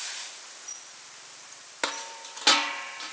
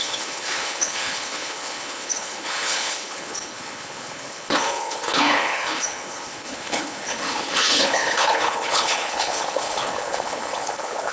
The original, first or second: first